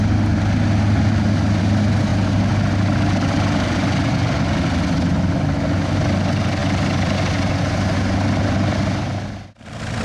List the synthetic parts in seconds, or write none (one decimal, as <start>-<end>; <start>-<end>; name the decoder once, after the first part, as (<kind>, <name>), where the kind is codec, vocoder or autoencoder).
none

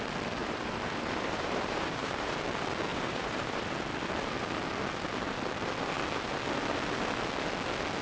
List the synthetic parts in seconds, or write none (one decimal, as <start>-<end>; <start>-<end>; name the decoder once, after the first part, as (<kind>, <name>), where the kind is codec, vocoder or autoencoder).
0.4-2.4 (vocoder, BigVGAN v2); 2.9-3.7

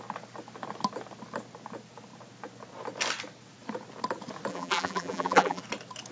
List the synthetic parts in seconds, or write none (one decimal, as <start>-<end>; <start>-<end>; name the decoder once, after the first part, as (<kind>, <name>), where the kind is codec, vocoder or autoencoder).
4.5-5.6 (vocoder, BigVGAN v2)

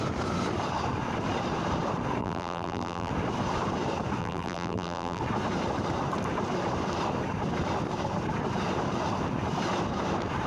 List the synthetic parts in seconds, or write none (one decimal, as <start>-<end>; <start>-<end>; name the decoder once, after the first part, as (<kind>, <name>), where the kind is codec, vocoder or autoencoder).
2.2-3.1 (vocoder, BigVGAN v2); 4.2-5.2

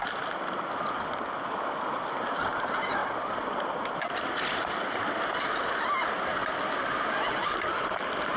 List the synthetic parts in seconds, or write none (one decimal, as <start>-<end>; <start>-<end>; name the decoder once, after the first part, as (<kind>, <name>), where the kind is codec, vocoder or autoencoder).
3.0-5.2 (vocoder, BigVGAN v2)